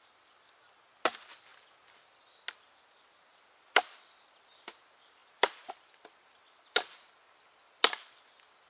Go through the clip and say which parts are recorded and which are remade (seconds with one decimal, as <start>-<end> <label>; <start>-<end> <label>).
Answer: 0.0-8.7 recorded